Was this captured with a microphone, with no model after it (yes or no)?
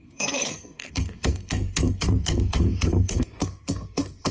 no